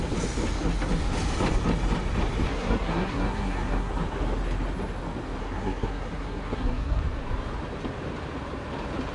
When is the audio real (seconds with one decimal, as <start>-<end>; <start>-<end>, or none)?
0.0-2.5; 3.9-5.4; 7.0-9.1